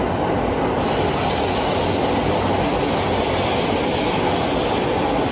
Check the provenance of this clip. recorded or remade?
recorded